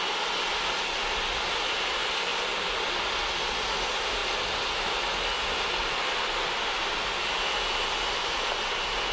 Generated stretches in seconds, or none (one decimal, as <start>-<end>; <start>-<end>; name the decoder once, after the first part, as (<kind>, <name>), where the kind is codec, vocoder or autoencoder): none